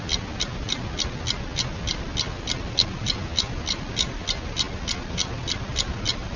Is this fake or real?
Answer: real